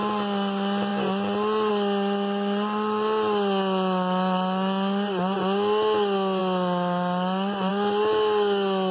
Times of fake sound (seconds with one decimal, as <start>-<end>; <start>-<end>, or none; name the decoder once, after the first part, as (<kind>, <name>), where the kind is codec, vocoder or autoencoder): none